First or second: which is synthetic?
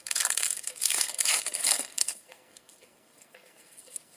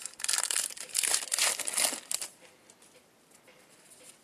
first